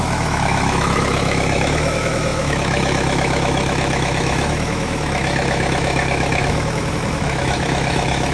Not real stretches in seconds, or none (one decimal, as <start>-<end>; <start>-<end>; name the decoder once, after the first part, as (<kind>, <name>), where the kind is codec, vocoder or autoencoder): 0.0-8.3 (autoencoder, DAC-VAE)